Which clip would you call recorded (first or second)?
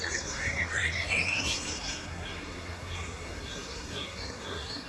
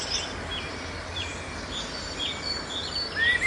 second